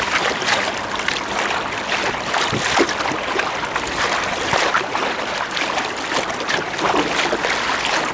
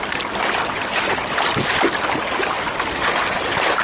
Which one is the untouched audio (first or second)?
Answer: first